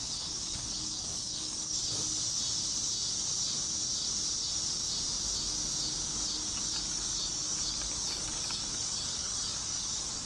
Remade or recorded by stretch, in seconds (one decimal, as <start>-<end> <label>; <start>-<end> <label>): 0.0-1.8 remade; 1.8-6.9 recorded; 6.9-10.3 remade